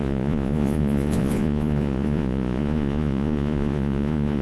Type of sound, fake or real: fake